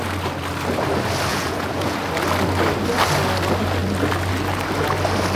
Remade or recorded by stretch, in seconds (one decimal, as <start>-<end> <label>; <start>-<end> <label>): 0.0-1.3 recorded; 1.3-2.0 remade; 2.0-5.4 recorded